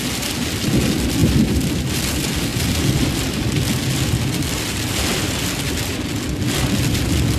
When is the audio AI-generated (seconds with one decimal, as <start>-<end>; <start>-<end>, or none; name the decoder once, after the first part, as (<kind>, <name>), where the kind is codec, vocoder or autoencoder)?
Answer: none